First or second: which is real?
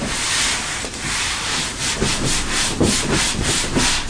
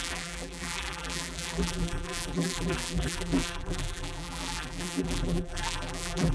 first